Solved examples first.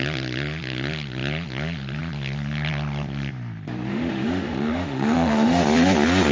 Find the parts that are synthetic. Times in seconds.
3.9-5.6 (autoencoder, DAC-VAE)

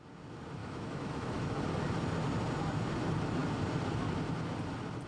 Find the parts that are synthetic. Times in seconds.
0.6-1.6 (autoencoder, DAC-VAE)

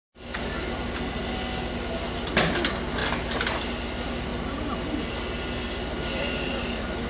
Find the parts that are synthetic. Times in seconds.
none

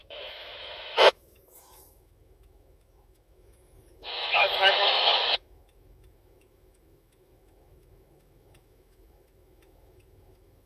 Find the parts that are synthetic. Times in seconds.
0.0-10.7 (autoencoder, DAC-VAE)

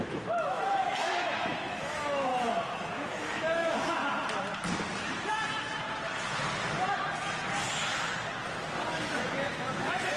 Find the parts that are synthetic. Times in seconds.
0.0-2.3 (autoencoder, DAC-VAE); 2.9-4.0; 9.3-10.2

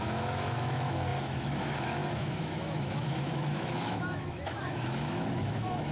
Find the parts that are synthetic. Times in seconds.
0.0-5.9 (autoencoder, DAC-VAE)

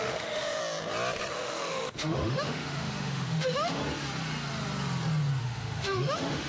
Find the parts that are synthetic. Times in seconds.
0.0-0.6 (autoencoder, DAC-VAE); 1.3-3.8; 5.4-6.5